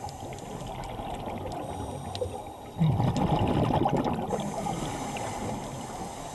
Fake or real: real